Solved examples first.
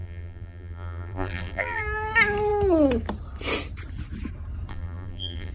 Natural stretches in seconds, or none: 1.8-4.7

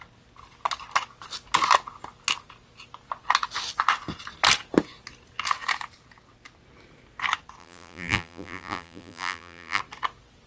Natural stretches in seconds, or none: 0.0-7.6; 9.8-10.5

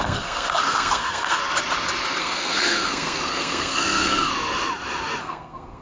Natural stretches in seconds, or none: 1.4-2.2; 4.3-5.2

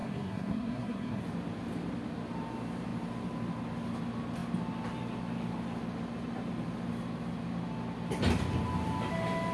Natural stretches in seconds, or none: 1.2-9.5